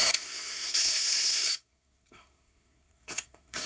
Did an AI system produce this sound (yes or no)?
yes